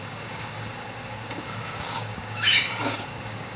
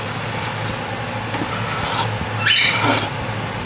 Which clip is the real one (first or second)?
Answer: second